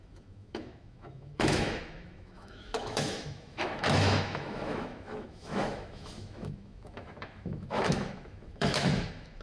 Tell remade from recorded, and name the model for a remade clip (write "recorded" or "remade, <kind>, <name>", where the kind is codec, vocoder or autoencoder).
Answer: remade, autoencoder, DAC-VAE